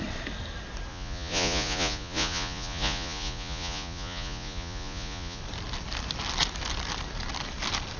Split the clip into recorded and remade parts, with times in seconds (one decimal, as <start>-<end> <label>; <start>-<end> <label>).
0.0-0.9 recorded; 0.9-5.4 remade; 5.4-8.0 recorded